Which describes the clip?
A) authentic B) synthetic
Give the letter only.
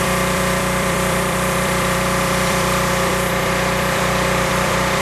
B